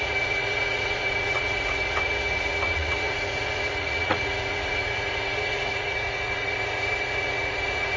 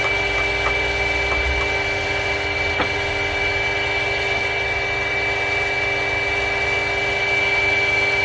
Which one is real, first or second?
second